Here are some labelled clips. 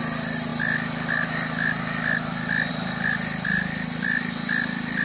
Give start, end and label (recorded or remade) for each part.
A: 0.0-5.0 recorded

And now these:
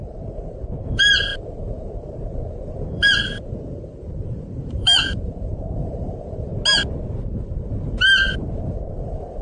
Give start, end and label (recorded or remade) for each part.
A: 0.0-6.5 remade; 6.5-7.2 recorded; 7.2-9.4 remade

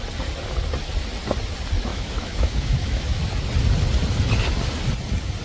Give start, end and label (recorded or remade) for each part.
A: 0.0-1.9 recorded; 1.9-3.2 remade; 3.2-5.4 recorded

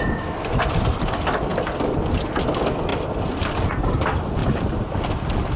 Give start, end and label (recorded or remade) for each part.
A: 0.0-1.5 recorded; 1.5-2.4 remade; 2.4-4.4 recorded; 4.4-5.6 remade

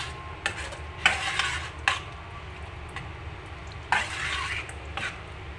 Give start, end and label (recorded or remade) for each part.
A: 0.0-5.6 recorded

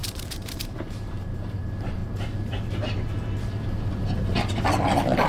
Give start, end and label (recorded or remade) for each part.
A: 0.0-2.0 remade; 2.0-5.3 recorded